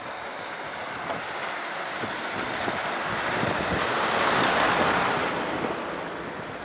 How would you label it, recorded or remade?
recorded